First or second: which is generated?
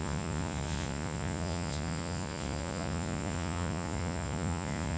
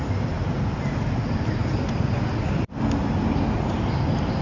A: first